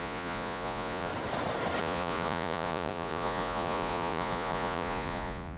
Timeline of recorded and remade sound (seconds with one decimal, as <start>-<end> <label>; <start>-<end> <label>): 0.0-1.1 remade; 1.1-1.8 recorded; 1.8-5.6 remade